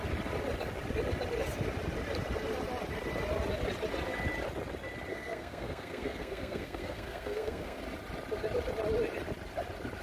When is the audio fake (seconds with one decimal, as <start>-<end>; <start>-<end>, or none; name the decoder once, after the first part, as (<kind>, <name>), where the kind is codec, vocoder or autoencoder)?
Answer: 5.1-7.8 (codec, SNAC)